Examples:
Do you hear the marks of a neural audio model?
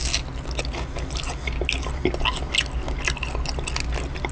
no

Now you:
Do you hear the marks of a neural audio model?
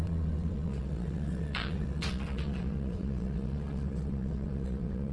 yes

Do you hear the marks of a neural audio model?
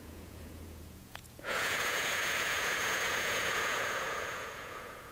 yes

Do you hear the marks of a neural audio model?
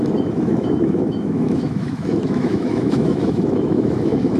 yes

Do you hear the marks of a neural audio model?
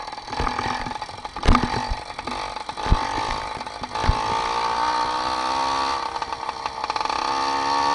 no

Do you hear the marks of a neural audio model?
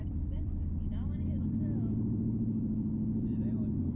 yes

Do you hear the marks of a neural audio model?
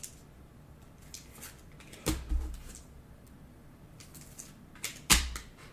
no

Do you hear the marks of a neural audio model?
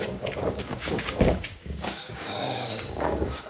yes